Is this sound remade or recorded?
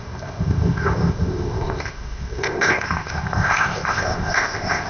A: remade